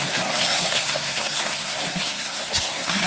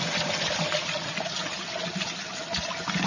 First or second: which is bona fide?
second